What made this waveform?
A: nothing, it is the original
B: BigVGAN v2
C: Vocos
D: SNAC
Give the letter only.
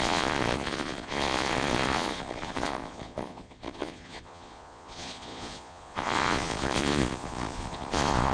C